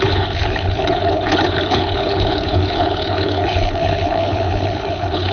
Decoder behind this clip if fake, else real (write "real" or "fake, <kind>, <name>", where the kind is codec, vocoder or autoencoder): fake, codec, HILCodec